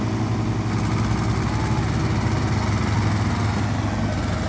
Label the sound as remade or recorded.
recorded